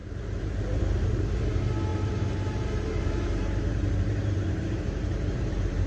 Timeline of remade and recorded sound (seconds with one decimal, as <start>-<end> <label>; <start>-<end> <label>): 0.0-5.9 remade